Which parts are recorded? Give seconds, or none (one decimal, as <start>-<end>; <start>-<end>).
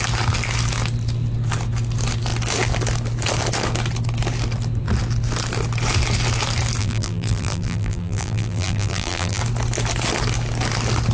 0.0-6.8; 9.4-11.1